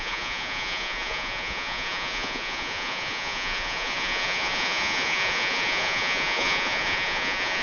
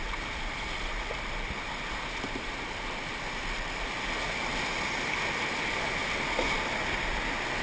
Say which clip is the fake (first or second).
first